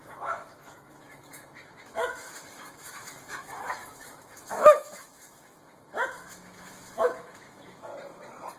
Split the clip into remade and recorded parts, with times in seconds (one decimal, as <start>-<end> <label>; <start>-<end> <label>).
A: 0.0-7.9 remade; 7.9-8.6 recorded